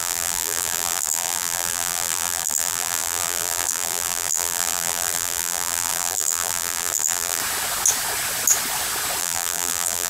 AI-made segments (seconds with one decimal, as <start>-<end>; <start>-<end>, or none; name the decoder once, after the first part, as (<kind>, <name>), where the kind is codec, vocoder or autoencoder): 0.0-7.4 (vocoder, BigVGAN v2); 9.2-10.1